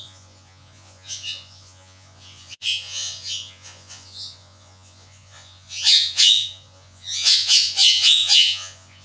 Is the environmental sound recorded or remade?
remade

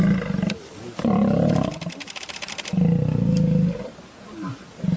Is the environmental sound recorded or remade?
recorded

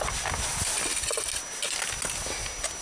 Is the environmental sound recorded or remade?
recorded